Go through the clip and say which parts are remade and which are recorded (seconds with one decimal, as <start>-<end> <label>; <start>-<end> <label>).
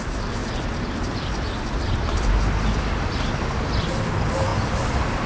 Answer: 0.0-0.4 recorded; 0.4-3.4 remade; 3.4-4.5 recorded; 4.5-5.3 remade